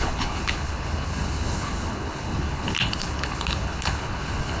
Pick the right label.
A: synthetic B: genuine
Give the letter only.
A